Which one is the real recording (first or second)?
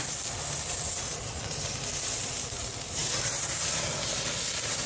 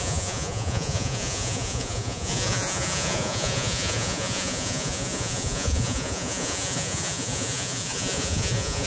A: first